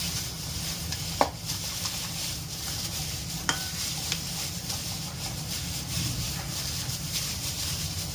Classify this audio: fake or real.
fake